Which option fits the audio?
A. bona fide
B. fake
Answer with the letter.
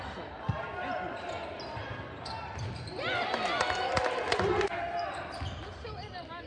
A